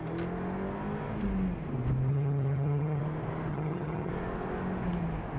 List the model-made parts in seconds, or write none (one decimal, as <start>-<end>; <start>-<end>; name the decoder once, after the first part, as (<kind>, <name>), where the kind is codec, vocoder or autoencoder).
2.1-3.0 (vocoder, HiFi-GAN); 3.5-4.1